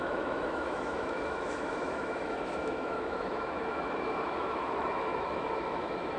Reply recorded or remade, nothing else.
remade